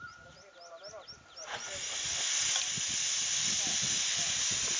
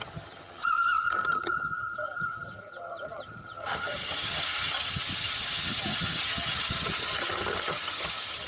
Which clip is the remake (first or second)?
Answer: second